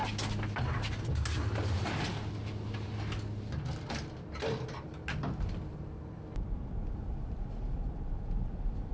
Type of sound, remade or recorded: recorded